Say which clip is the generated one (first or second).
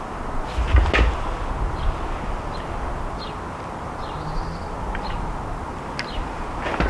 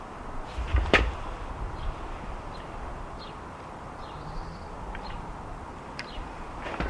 second